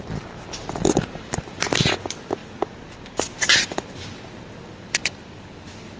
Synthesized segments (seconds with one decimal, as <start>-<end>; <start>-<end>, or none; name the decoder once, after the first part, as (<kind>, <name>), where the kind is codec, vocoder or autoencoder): none